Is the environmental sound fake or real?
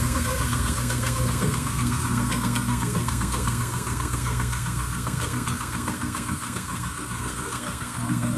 fake